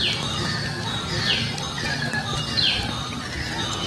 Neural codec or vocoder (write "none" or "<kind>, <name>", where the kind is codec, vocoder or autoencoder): none